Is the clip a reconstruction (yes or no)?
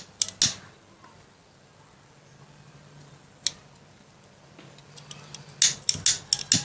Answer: no